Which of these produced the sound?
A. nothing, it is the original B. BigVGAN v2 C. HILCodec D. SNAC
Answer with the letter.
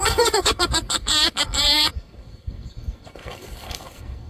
D